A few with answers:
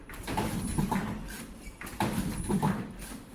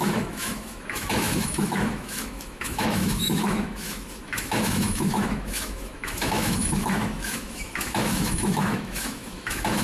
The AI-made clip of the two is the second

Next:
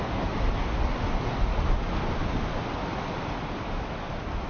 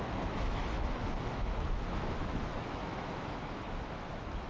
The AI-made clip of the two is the second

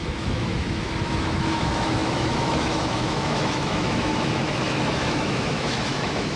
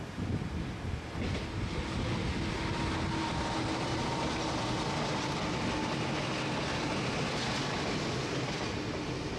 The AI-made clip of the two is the first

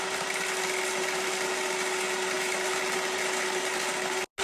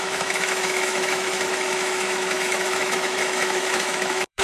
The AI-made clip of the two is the second